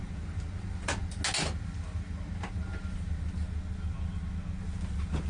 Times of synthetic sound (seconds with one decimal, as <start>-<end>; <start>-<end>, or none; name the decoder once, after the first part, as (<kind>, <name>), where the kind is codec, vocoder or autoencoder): none